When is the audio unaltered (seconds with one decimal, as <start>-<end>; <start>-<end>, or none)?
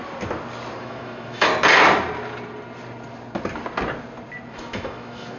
0.0-0.8; 1.5-4.5